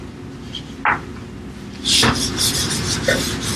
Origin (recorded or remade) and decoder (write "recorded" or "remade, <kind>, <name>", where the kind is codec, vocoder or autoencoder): recorded